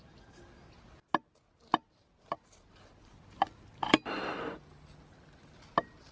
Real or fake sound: real